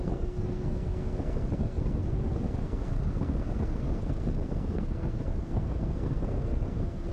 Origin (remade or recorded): remade